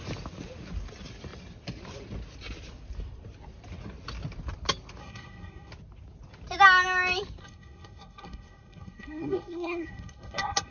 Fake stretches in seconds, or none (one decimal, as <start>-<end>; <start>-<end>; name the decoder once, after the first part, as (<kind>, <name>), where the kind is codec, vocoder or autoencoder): 5.0-5.7 (codec, SNAC); 7.4-10.7